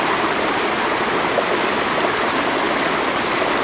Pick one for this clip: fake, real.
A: real